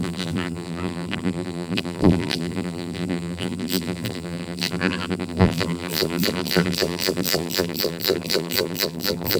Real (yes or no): no